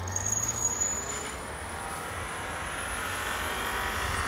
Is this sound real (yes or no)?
yes